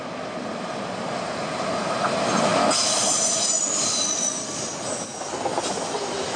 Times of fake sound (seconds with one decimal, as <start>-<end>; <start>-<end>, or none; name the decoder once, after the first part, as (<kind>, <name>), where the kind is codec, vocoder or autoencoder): none